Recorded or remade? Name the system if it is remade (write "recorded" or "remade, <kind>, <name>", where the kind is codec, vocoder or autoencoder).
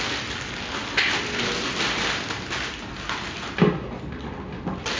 recorded